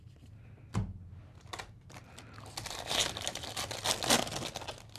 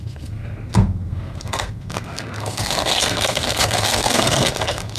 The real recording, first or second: first